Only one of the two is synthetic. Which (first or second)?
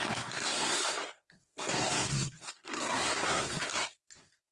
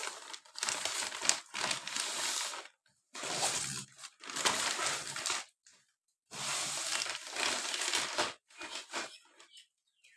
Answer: first